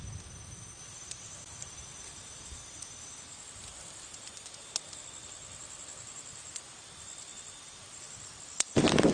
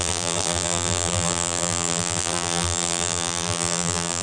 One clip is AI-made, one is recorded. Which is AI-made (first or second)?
second